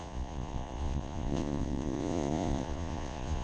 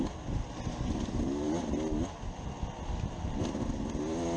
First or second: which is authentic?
second